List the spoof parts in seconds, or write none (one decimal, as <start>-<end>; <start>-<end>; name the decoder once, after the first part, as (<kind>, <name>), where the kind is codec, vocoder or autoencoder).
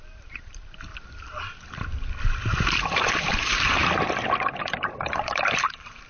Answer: 0.0-0.9 (vocoder, BigVGAN v2); 2.3-3.8; 4.6-6.1